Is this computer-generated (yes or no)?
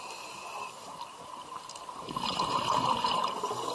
no